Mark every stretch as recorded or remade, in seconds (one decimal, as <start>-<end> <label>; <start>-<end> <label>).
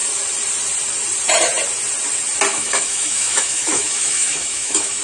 0.0-2.5 recorded; 2.5-5.0 remade